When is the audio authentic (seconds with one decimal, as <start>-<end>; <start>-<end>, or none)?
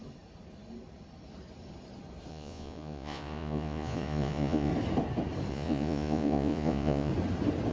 0.0-2.3; 4.7-5.5; 7.1-7.7